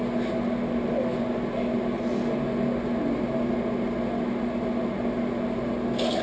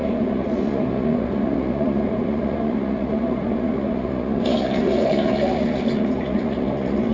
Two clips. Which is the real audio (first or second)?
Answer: first